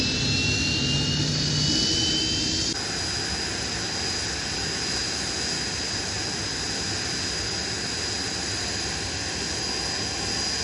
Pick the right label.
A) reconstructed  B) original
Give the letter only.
B